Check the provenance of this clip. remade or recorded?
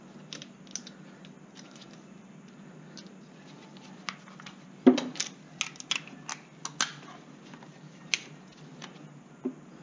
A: recorded